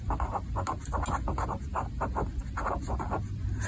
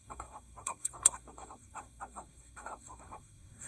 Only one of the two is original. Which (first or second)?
first